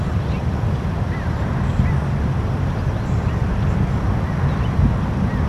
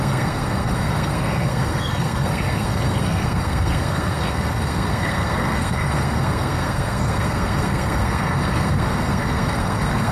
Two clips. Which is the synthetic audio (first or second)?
second